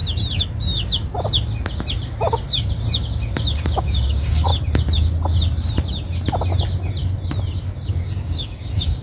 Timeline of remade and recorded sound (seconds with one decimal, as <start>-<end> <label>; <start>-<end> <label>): 0.0-3.8 recorded; 3.8-4.5 remade; 4.5-7.9 recorded; 7.9-9.0 remade